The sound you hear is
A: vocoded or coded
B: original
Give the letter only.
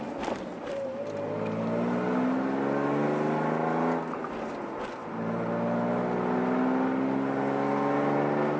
B